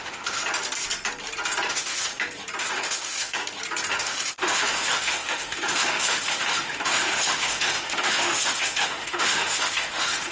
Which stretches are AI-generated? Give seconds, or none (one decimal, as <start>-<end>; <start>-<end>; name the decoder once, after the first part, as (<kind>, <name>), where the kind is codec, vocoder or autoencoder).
0.0-0.4 (autoencoder, DAC-VAE); 1.7-2.1; 2.6-3.4; 3.9-10.3